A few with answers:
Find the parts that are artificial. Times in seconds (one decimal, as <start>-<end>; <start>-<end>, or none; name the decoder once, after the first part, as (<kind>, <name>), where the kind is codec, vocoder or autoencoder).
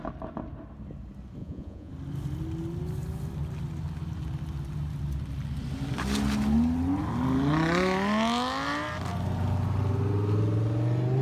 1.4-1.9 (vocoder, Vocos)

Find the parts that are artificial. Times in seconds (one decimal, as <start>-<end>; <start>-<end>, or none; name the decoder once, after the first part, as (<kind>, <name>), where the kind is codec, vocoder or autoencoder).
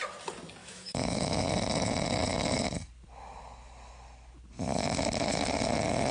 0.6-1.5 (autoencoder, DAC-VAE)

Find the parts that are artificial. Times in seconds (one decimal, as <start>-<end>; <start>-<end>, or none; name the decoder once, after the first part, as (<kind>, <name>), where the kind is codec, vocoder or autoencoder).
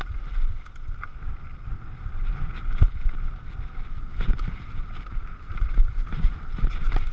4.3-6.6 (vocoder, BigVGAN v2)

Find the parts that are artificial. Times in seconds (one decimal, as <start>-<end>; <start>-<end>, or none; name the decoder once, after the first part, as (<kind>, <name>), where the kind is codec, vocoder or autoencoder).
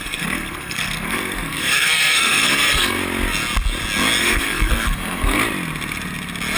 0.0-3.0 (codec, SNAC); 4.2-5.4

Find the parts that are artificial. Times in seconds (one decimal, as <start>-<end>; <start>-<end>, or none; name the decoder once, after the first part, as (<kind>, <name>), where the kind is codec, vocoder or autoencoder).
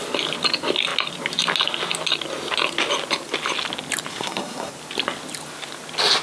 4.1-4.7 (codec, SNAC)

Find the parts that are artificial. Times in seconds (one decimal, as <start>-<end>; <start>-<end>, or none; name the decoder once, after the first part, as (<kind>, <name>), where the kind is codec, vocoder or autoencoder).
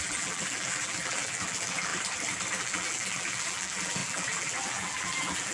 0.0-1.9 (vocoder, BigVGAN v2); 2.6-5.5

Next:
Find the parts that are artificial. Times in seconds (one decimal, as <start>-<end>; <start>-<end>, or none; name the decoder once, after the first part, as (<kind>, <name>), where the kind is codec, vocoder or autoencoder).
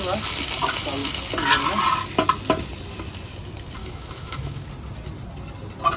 3.8-4.7 (autoencoder, DAC-VAE)